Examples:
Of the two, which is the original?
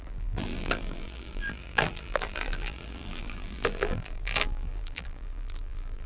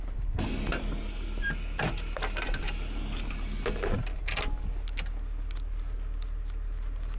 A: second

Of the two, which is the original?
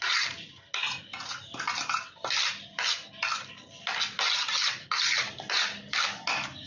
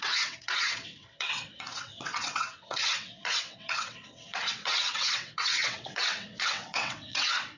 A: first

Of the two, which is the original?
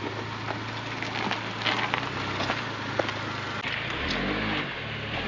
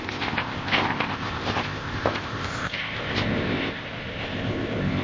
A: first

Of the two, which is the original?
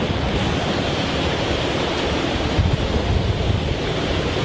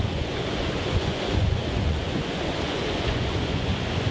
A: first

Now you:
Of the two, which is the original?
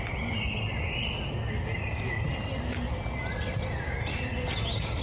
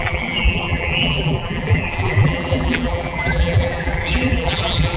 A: first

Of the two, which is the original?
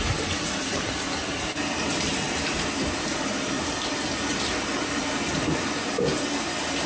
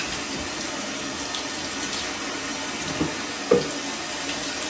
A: second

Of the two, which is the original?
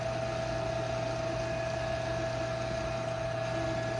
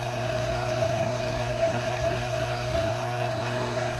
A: first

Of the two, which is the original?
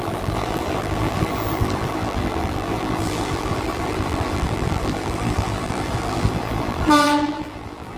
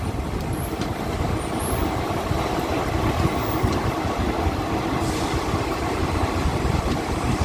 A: second